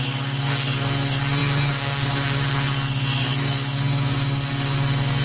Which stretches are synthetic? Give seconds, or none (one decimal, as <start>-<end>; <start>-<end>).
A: none